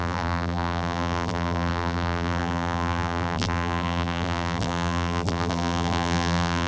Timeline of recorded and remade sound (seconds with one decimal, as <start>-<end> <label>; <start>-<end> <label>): 0.0-6.7 remade